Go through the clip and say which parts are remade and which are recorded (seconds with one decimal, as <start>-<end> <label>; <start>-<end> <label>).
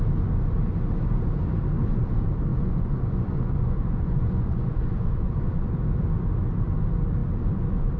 0.0-2.5 recorded; 2.5-5.7 remade; 5.7-8.0 recorded